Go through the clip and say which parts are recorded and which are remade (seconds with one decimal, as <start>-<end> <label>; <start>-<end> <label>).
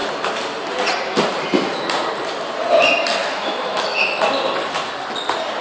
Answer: 0.0-3.2 recorded; 3.2-4.2 remade; 4.2-5.6 recorded